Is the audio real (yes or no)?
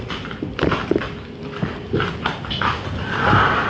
yes